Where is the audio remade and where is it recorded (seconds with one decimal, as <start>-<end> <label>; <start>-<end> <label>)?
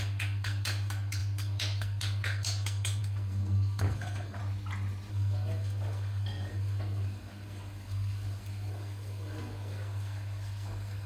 0.0-4.4 remade; 4.4-5.1 recorded; 5.1-11.1 remade